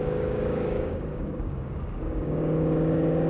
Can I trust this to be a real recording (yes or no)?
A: no